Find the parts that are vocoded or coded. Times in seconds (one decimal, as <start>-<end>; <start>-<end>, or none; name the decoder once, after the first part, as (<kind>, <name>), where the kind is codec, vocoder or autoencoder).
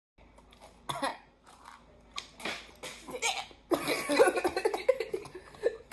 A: 1.1-1.8 (vocoder, BigVGAN v2)